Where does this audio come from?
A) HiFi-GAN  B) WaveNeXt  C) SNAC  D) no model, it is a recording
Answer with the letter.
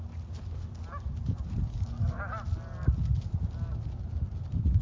D